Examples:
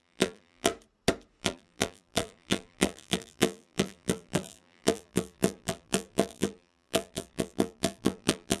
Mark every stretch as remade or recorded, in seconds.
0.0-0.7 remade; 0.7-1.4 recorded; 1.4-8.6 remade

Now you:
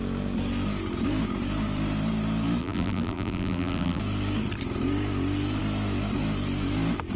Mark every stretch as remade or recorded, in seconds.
0.0-2.6 recorded; 2.6-4.0 remade; 4.0-7.2 recorded

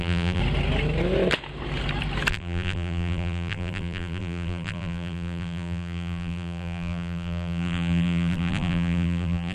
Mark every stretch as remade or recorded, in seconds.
0.0-0.4 remade; 0.4-2.3 recorded; 2.3-9.5 remade